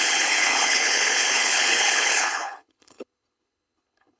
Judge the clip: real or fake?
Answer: fake